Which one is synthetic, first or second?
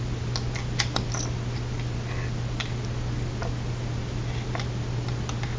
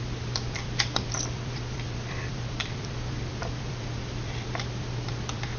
second